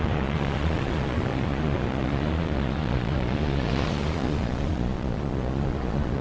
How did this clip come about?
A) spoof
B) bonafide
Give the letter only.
A